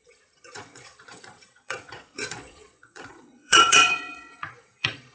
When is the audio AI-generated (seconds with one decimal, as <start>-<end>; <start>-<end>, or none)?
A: 0.0-5.1